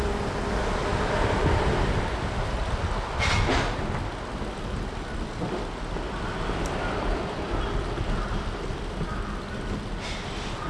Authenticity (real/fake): real